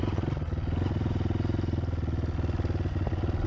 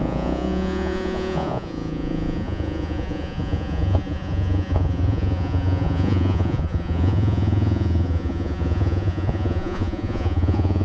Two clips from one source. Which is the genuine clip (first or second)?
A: first